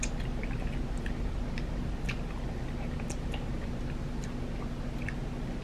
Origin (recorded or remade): recorded